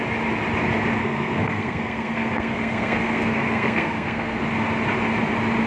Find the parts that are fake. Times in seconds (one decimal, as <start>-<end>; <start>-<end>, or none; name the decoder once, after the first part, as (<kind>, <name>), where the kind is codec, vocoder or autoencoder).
1.0-4.4 (codec, SNAC)